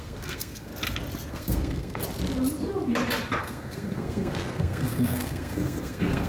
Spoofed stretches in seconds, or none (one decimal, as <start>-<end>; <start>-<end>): 0.0-0.7; 1.3-2.0; 3.4-6.3